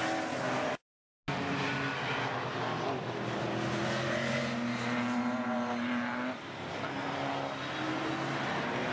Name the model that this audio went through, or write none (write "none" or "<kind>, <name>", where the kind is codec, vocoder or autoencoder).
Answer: none